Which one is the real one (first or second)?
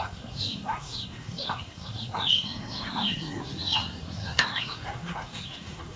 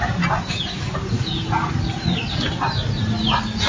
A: second